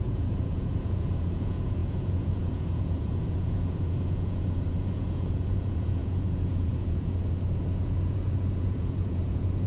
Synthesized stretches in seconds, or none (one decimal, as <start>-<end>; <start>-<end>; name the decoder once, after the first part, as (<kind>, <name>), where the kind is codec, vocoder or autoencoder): 0.0-9.7 (vocoder, Vocos)